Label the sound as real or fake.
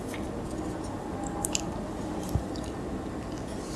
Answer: real